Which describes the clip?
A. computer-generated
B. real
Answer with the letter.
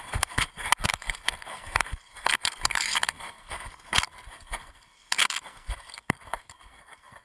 A